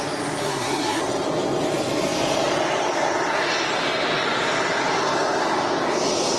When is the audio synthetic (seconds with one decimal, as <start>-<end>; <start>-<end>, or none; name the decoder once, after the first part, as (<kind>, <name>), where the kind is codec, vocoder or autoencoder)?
0.4-1.0 (codec, SNAC)